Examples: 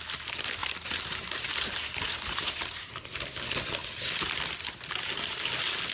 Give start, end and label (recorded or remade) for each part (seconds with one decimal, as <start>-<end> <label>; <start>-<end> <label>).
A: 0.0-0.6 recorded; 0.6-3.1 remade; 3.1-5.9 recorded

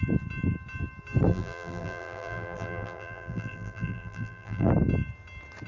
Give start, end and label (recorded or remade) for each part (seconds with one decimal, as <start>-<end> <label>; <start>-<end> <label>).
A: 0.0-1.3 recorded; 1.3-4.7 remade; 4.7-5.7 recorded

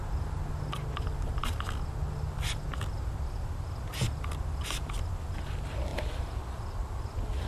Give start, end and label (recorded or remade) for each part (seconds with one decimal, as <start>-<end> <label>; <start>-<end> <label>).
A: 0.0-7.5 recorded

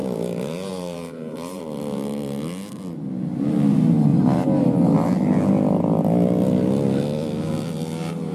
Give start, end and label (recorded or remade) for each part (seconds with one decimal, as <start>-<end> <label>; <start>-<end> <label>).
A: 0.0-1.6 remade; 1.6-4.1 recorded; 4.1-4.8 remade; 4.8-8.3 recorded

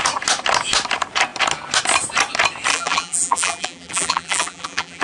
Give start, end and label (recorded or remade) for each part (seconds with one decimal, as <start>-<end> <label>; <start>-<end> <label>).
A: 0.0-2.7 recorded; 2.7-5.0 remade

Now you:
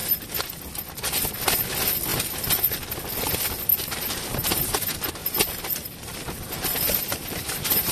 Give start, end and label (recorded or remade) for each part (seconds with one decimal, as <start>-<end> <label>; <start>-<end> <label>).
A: 0.0-2.1 recorded; 2.1-2.7 remade; 2.7-3.7 recorded; 3.7-4.5 remade; 4.5-5.2 recorded; 5.2-7.9 remade

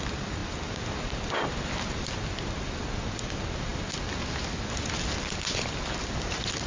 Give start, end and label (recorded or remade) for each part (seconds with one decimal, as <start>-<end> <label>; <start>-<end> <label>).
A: 0.0-6.7 recorded

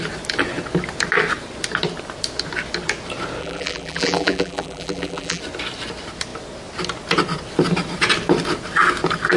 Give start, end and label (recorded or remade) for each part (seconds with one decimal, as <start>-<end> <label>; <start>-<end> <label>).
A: 0.0-3.4 recorded; 3.4-5.4 remade; 5.4-9.4 recorded